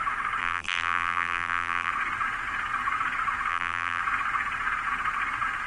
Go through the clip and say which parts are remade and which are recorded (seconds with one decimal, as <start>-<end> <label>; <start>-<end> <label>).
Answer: 0.0-0.4 recorded; 0.4-1.9 remade; 1.9-3.5 recorded; 3.5-4.0 remade; 4.0-5.7 recorded